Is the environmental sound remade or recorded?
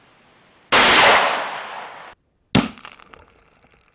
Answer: recorded